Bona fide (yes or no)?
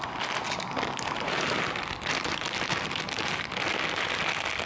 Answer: yes